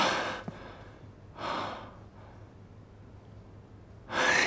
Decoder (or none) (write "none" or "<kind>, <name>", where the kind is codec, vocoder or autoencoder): none